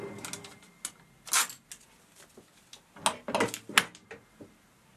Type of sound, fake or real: real